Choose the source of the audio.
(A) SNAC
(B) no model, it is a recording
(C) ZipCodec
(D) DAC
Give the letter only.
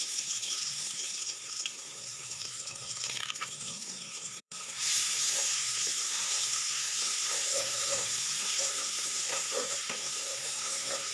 A